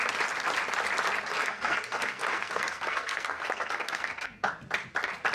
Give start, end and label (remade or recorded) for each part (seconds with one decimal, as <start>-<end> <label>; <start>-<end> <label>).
0.0-1.3 recorded; 1.3-4.5 remade; 4.5-5.3 recorded